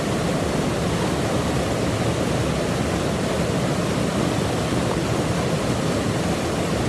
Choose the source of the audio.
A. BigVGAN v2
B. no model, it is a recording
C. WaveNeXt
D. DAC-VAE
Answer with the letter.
B